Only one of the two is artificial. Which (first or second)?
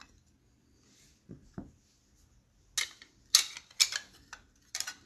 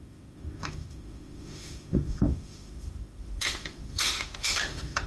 second